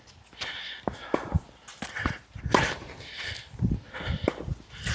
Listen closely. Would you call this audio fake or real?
real